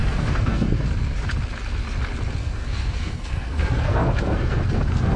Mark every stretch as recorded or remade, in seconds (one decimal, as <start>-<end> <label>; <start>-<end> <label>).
0.0-0.8 remade; 0.8-2.4 recorded; 2.4-5.2 remade